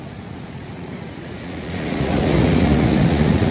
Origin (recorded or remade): remade